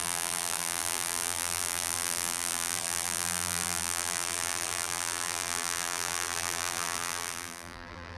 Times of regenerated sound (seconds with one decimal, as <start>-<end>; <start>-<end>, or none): 0.0-8.2